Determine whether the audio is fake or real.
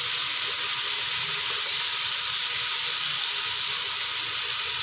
real